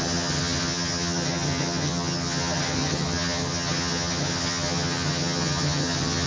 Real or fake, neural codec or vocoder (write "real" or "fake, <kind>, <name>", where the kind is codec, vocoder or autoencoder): fake, vocoder, HiFi-GAN